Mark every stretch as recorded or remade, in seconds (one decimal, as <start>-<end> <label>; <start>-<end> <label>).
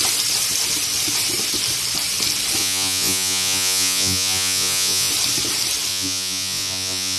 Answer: 0.0-2.6 recorded; 2.6-5.1 remade; 5.1-5.9 recorded; 5.9-7.2 remade